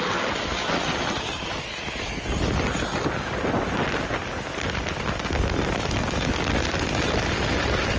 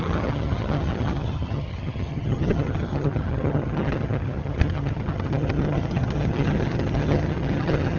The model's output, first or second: second